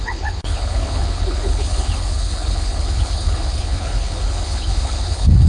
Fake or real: fake